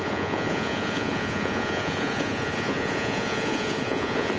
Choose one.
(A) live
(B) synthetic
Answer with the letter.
B